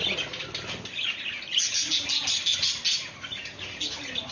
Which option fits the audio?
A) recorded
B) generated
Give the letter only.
A